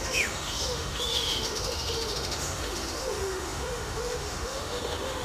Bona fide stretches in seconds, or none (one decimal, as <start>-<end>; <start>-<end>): none